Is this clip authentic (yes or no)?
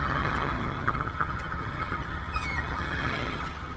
no